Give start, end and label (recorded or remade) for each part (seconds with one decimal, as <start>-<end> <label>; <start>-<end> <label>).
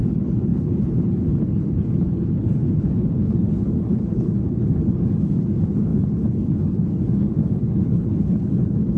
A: 0.0-9.0 remade